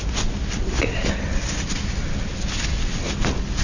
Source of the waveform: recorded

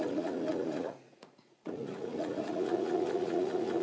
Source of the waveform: remade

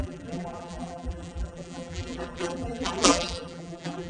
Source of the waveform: remade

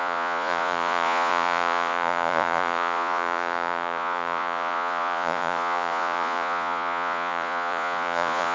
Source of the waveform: remade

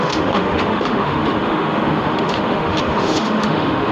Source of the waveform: remade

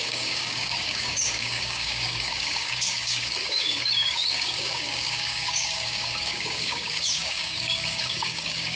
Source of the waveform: remade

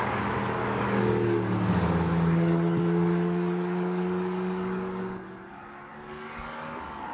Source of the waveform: remade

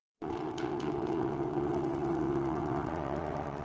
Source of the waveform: remade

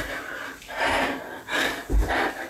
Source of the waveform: recorded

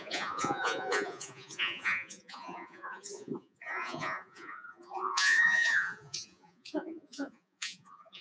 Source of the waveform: remade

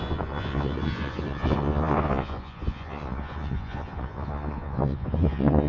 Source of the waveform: remade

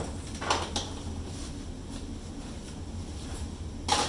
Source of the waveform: recorded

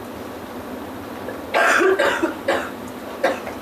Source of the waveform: recorded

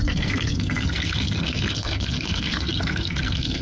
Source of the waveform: remade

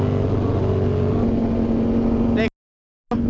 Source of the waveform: recorded